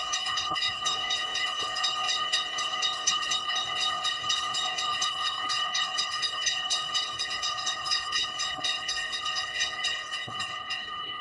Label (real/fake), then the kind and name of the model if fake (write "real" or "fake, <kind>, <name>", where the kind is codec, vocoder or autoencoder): fake, codec, HILCodec